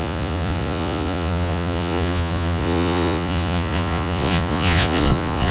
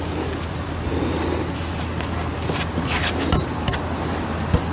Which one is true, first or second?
second